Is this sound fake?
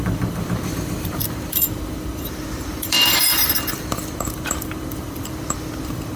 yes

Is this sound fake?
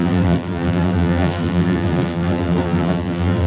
yes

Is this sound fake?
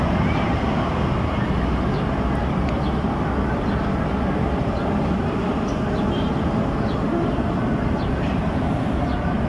no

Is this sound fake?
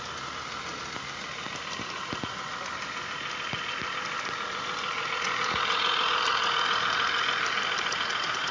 no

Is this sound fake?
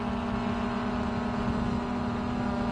no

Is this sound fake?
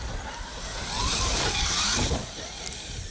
no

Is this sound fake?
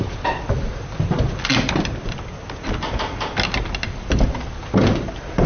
no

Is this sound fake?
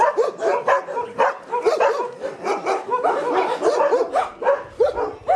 no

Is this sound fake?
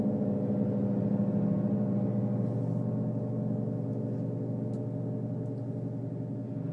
no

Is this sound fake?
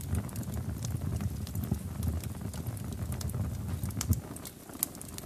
no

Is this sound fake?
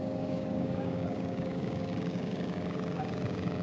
yes